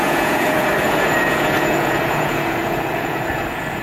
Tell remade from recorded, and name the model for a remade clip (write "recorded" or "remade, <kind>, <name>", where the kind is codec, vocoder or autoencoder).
remade, vocoder, Vocos